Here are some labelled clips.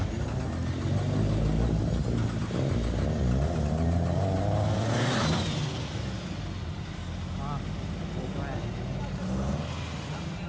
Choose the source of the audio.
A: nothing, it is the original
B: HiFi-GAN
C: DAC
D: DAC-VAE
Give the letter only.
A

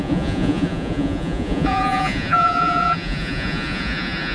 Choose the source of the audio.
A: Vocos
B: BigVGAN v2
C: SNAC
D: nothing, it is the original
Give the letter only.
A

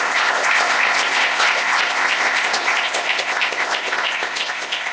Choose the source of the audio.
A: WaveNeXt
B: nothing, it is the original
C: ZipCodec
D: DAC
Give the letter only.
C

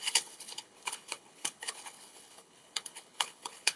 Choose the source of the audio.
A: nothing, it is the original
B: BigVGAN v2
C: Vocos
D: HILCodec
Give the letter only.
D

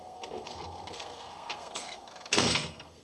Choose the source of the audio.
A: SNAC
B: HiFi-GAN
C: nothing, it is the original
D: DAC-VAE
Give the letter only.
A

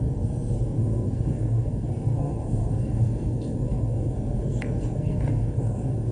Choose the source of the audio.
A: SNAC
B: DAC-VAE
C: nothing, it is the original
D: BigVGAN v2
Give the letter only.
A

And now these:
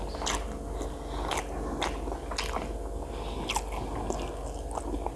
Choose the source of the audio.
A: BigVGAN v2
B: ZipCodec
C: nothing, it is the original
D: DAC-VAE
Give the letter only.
C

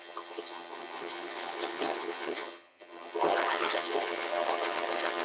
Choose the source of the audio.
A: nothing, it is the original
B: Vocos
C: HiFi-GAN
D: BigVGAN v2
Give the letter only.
C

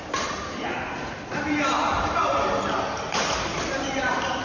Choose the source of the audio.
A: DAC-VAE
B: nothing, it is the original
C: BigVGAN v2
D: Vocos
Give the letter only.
C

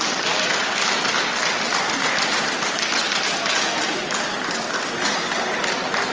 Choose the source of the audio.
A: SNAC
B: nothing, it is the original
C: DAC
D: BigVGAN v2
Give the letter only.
B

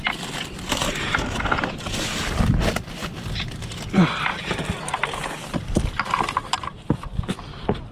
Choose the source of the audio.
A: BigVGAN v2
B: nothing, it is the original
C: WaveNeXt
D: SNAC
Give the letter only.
B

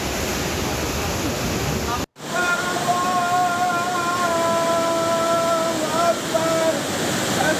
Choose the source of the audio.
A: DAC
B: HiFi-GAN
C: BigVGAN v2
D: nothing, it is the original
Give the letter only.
D